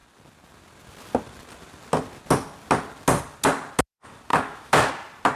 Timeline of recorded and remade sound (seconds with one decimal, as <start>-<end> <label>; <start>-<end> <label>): 0.0-4.3 recorded; 4.3-4.9 remade; 4.9-5.4 recorded